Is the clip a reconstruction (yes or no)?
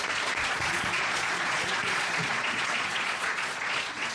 yes